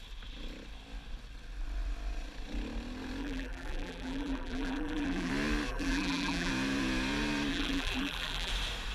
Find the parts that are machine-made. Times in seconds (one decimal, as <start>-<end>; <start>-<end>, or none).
3.2-5.3; 5.7-6.5; 7.5-8.5